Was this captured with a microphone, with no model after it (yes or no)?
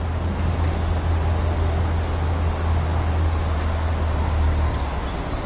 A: yes